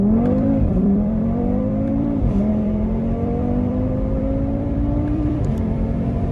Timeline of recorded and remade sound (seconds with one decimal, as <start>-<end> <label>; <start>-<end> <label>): 0.0-6.3 remade